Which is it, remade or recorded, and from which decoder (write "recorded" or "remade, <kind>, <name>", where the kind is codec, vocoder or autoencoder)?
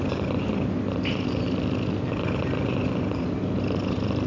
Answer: recorded